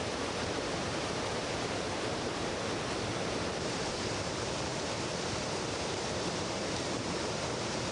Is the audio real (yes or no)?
no